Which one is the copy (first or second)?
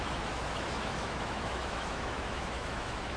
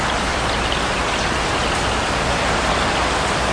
first